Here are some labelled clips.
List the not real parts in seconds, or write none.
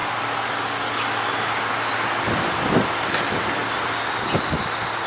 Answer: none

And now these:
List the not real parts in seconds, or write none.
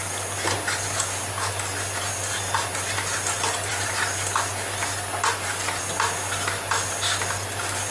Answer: none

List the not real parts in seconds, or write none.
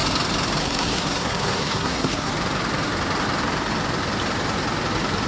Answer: 0.6-2.3 (codec, SNAC)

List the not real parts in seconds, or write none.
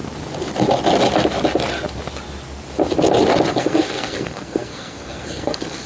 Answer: 3.5-5.9 (codec, SNAC)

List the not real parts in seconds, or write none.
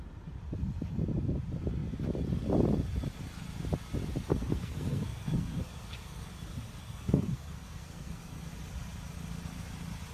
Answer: 4.3-6.3 (codec, SNAC); 6.8-8.5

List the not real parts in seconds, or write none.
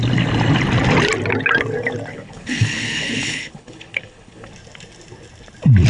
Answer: 2.1-4.5 (codec, HILCodec)